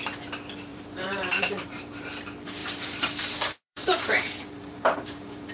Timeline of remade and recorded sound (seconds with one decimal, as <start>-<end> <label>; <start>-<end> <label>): 0.0-0.7 recorded; 0.7-2.1 remade; 2.1-2.6 recorded; 2.6-5.5 remade